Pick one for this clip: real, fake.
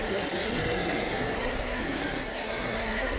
fake